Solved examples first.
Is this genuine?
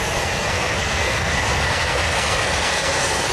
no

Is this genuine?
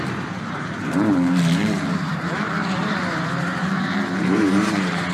no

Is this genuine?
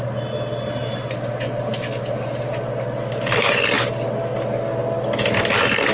yes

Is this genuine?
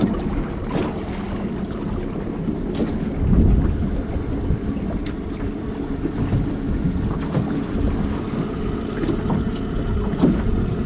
yes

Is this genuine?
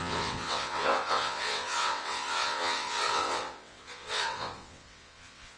no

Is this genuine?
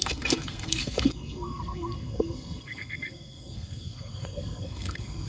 no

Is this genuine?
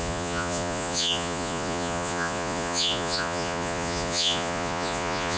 no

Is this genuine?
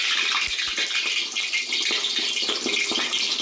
yes